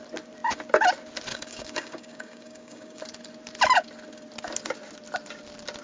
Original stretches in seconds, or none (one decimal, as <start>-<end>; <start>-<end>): 0.0-1.3; 3.0-5.8